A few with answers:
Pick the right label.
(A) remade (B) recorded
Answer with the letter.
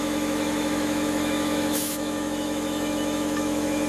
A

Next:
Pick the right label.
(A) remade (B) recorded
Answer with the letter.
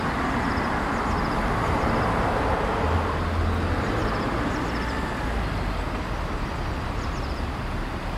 A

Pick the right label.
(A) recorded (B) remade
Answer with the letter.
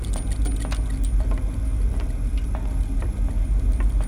A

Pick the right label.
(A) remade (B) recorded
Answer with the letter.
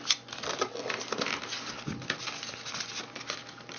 A